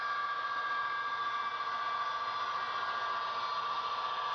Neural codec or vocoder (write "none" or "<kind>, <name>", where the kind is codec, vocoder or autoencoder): none